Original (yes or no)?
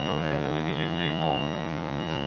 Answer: no